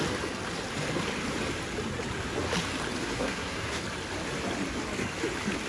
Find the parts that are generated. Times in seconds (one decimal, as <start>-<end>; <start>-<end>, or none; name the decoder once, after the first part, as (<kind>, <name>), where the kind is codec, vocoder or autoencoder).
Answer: 3.0-3.8 (codec, SNAC)